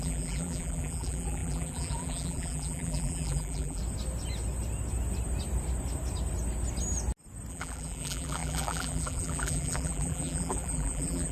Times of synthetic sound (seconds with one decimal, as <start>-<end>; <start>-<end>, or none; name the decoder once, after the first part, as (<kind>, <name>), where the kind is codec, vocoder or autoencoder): 0.0-3.8 (vocoder, BigVGAN v2); 7.5-11.3